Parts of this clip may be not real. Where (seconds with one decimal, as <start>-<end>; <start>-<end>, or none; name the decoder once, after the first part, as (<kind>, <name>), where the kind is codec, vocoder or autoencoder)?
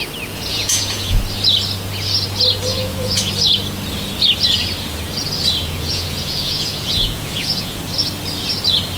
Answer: 0.5-1.2 (vocoder, Vocos); 2.7-3.3; 5.6-7.8